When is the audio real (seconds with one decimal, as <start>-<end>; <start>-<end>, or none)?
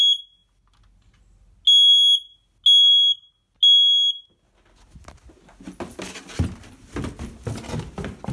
0.0-8.3